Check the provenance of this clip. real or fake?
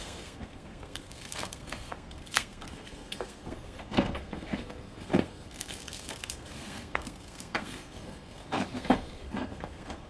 fake